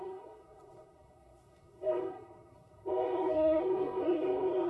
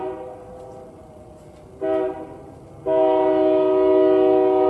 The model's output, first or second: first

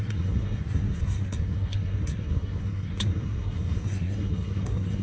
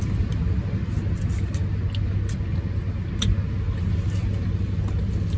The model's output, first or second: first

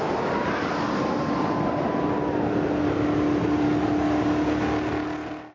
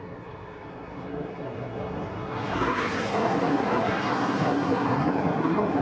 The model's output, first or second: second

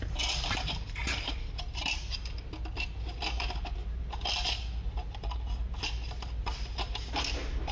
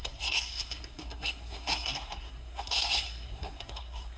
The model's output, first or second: second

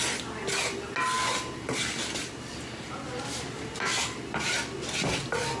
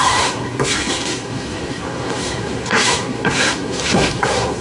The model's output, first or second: second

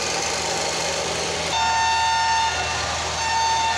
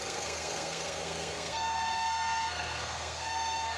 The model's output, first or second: second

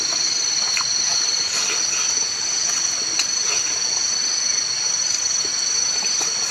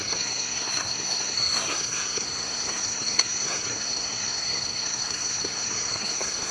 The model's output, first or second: second